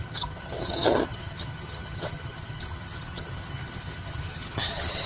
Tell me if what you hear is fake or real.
fake